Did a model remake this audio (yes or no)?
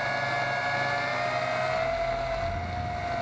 no